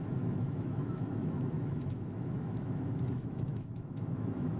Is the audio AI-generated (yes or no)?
yes